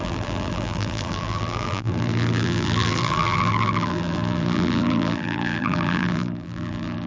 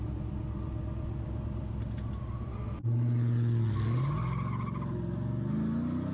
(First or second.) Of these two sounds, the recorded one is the second